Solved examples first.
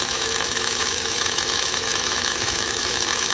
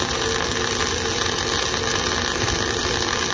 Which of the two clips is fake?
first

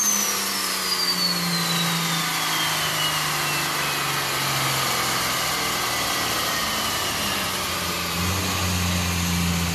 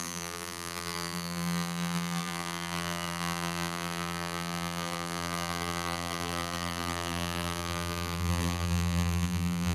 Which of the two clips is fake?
second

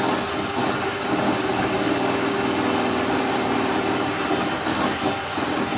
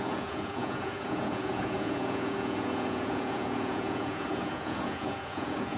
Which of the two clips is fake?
second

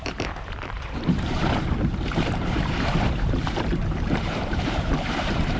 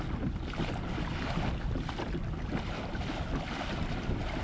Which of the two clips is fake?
first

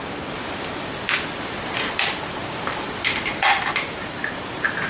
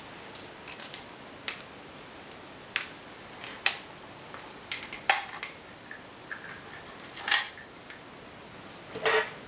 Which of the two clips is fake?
first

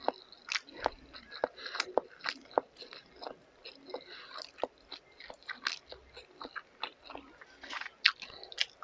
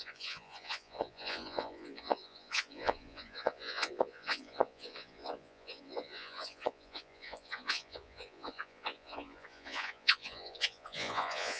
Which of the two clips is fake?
second